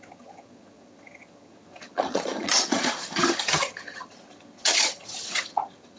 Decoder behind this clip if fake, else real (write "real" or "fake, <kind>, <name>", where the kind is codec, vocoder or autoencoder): fake, vocoder, HiFi-GAN